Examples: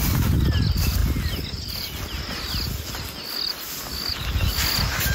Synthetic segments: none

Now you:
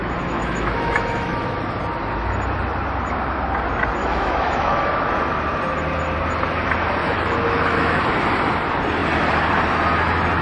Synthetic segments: 0.0-1.6; 4.0-4.8; 7.0-8.0

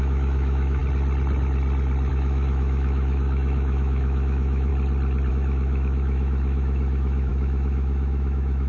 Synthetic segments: 0.0-0.8; 2.1-4.7; 5.3-8.7

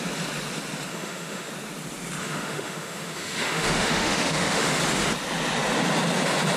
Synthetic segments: 0.9-1.5; 2.2-4.8

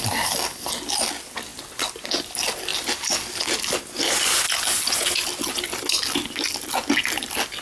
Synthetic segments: none